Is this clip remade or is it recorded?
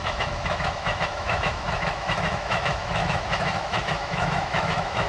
remade